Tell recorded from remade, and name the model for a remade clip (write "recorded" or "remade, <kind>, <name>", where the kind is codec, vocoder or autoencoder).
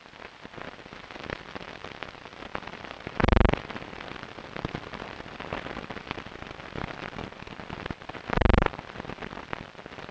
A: remade, vocoder, BigVGAN v2